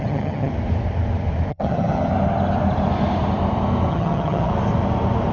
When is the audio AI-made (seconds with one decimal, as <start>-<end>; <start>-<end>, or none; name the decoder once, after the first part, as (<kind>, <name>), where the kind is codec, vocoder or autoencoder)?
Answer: 0.0-0.5 (vocoder, HiFi-GAN); 1.5-2.1; 3.9-4.5